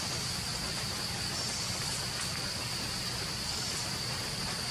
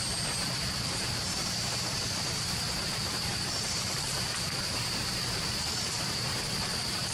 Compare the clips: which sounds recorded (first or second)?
first